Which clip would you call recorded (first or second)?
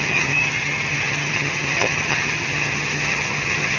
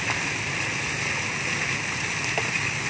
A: second